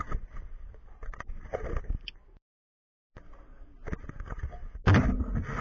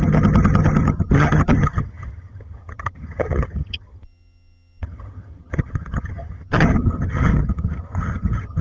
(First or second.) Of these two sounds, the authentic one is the first